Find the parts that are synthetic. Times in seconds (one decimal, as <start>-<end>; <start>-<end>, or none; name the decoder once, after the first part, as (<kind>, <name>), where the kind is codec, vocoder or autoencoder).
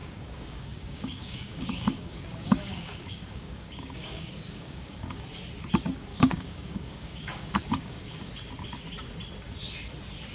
0.0-5.2 (codec, DAC); 6.1-8.3